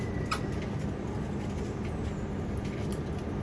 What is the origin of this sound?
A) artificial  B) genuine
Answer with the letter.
B